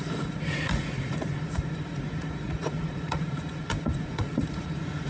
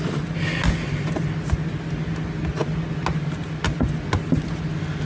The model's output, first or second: first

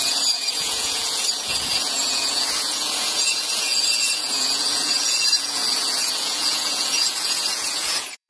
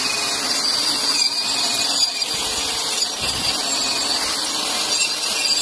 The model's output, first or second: first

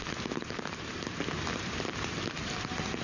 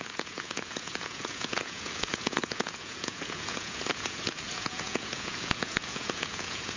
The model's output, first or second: second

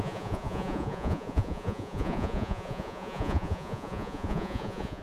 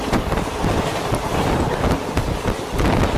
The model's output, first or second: first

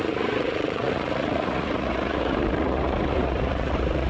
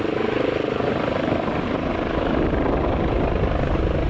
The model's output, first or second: first